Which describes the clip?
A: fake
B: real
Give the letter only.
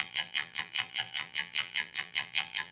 A